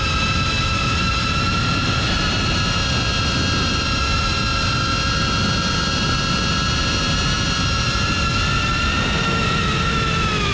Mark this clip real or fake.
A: real